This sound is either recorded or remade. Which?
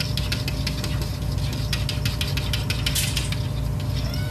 recorded